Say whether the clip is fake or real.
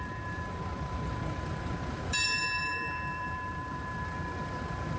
fake